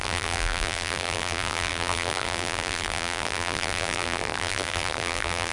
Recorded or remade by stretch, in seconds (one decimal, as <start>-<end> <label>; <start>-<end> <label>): 0.0-5.5 remade